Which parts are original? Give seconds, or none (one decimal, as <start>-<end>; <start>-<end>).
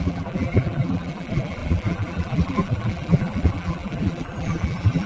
none